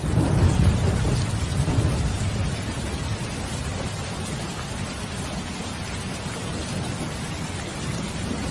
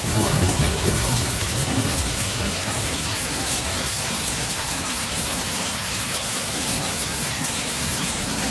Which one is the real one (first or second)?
first